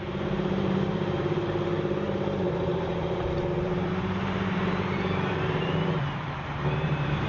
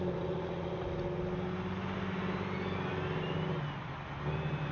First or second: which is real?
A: second